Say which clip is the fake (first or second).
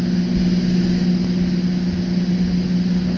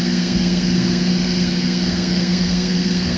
second